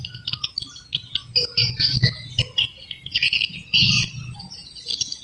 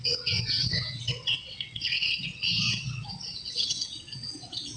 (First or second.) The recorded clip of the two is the first